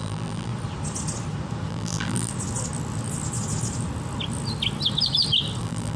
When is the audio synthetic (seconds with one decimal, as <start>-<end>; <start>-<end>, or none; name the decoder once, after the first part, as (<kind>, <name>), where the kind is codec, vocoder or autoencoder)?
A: 0.0-0.5 (vocoder, BigVGAN v2); 1.7-2.3; 5.6-6.0